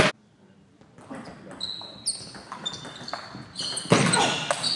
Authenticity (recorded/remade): recorded